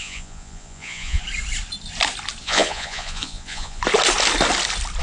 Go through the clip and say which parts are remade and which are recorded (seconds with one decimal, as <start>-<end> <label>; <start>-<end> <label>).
0.0-1.2 remade; 1.2-2.4 recorded; 2.4-3.8 remade; 3.8-5.0 recorded